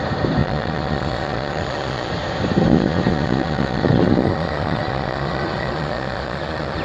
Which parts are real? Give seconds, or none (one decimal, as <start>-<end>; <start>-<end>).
0.0-0.4; 2.1-2.6